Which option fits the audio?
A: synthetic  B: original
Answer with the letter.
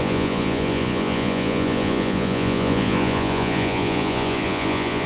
A